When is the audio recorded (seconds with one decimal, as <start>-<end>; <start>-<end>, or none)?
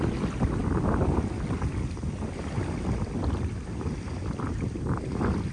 0.0-5.5